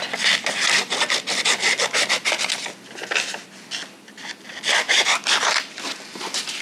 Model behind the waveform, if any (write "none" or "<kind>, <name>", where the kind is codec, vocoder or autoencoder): none